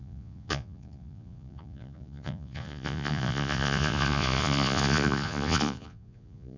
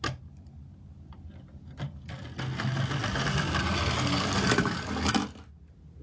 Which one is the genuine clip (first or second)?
second